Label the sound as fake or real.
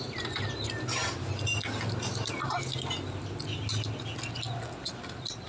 real